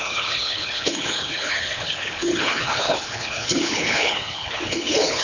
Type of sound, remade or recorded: remade